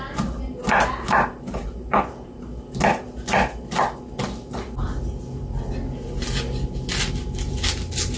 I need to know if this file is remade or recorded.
recorded